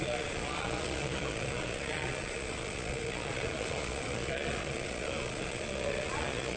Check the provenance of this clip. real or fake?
fake